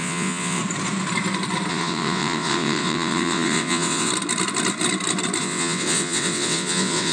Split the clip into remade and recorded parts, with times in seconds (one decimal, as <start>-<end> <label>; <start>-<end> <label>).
0.0-0.6 remade; 0.6-1.7 recorded; 1.7-4.1 remade; 4.1-5.4 recorded; 5.4-7.1 remade